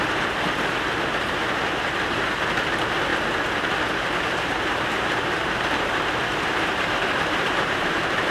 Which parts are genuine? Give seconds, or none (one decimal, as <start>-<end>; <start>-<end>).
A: 3.1-3.9

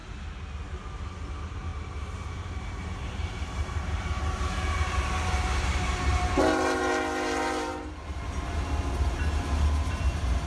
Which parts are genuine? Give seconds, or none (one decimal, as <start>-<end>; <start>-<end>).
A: 0.0-2.8; 6.8-10.5

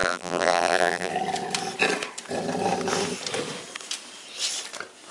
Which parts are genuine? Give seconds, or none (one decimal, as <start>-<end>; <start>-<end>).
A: 1.1-5.1

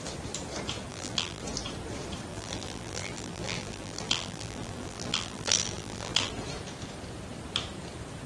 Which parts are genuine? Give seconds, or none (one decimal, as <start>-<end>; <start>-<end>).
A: 0.0-0.9; 1.4-2.3; 6.3-8.3

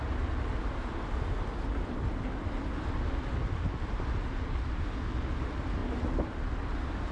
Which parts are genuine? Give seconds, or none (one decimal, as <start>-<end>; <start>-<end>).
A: 0.0-7.1

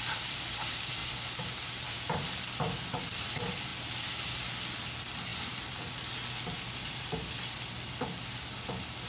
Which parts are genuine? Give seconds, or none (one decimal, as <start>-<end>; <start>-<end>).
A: 1.0-3.0; 3.7-4.8